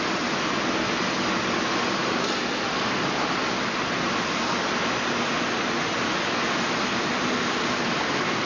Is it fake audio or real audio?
real